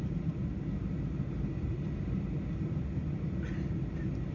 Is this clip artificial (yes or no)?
no